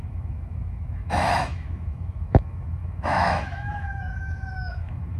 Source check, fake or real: fake